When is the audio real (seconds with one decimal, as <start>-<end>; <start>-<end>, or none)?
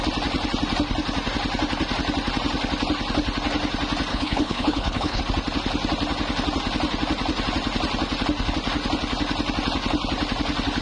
0.0-4.1; 5.2-10.8